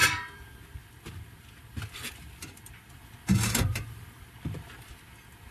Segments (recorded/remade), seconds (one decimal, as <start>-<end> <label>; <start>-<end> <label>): 0.0-4.9 remade; 4.9-5.5 recorded